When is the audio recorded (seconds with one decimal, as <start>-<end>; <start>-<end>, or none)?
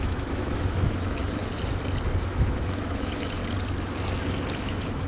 1.4-2.2; 3.4-4.6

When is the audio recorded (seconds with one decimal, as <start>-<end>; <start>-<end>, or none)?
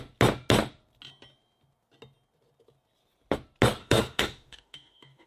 0.0-3.8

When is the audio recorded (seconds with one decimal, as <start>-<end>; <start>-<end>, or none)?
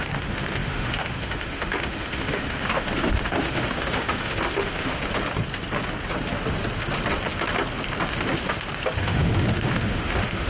5.0-9.0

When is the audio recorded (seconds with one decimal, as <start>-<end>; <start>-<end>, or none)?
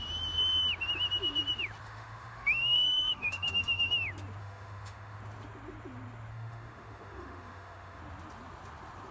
0.0-1.8; 4.0-4.4; 5.2-6.3; 8.0-9.1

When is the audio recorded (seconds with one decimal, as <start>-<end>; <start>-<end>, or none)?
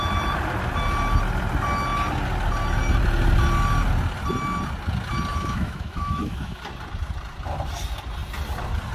0.0-5.3; 6.6-8.9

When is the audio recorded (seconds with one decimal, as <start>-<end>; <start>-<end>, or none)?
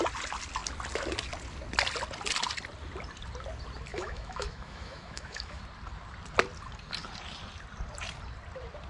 0.0-3.9; 5.6-8.9